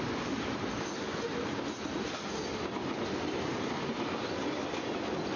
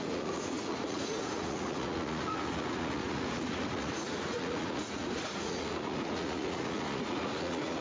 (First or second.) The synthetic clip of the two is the second